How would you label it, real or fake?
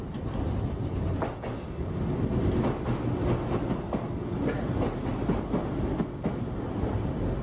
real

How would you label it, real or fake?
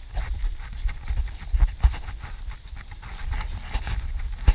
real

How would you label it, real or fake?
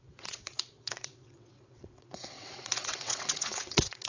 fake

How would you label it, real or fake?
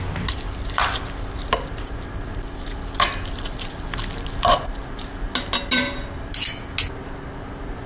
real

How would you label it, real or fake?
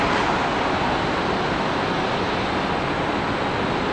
real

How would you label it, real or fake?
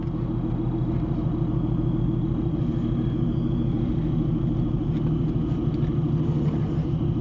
real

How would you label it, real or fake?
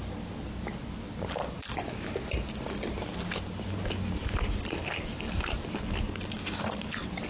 real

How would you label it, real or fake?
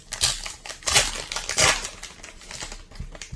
real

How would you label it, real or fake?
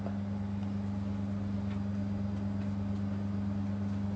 real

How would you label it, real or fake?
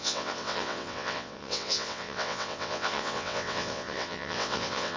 fake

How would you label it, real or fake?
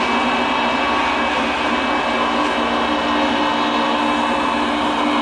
real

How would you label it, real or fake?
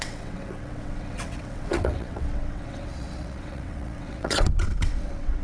fake